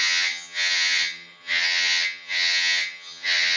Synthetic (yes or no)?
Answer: yes